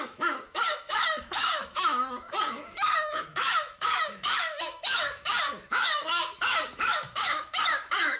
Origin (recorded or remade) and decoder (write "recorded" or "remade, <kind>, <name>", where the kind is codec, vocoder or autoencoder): remade, autoencoder, DAC-VAE